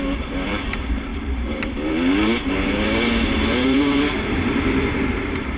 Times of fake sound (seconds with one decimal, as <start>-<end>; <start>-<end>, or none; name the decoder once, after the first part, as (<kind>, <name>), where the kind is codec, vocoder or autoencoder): 0.0-5.6 (vocoder, BigVGAN v2)